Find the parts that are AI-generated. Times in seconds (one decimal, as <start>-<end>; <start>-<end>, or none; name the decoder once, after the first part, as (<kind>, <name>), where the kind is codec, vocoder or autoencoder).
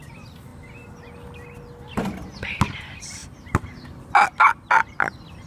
none